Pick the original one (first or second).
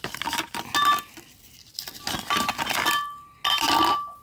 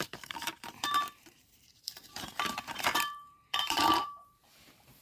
first